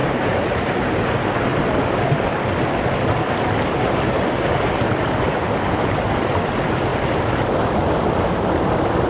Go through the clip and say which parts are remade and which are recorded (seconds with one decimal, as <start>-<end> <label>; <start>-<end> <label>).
0.0-0.9 remade; 0.9-9.1 recorded